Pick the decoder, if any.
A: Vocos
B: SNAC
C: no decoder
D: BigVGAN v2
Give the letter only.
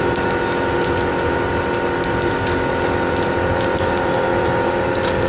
C